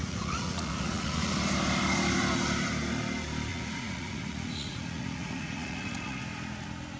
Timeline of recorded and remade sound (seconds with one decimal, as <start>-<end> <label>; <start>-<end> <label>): 0.0-1.3 remade; 1.3-3.5 recorded; 3.5-6.2 remade; 6.2-7.0 recorded